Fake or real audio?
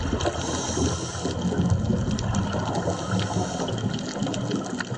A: real